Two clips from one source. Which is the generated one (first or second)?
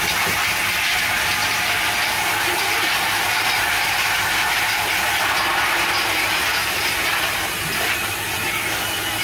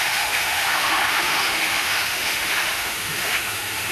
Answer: second